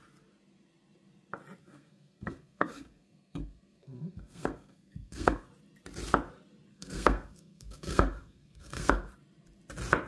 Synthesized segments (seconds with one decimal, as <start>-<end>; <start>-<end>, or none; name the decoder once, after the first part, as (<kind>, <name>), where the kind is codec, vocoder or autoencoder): 1.6-5.5 (codec, SNAC); 6.7-9.1